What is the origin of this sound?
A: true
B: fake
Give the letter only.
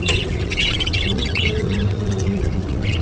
B